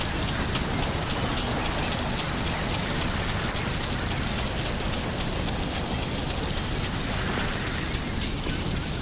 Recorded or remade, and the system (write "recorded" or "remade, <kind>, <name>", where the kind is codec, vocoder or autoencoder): recorded